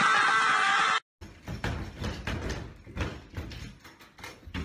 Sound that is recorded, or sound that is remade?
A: recorded